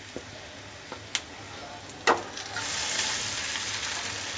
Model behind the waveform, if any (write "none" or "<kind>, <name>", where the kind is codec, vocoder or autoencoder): none